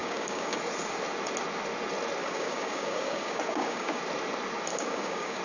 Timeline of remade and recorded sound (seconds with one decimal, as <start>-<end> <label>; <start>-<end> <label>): 0.0-0.6 remade; 0.6-2.2 recorded; 2.2-4.0 remade; 4.0-4.7 recorded; 4.7-5.4 remade